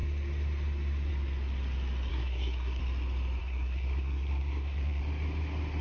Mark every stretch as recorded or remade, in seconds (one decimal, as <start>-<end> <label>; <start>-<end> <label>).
0.0-2.1 recorded; 2.1-2.8 remade; 2.8-3.4 recorded; 3.4-5.0 remade; 5.0-5.8 recorded